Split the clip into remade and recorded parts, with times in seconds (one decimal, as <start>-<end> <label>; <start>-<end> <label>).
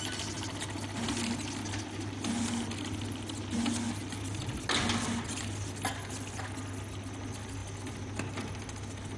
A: 0.0-9.2 recorded